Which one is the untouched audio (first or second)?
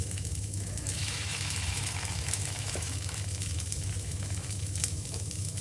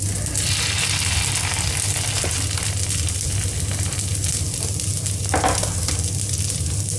second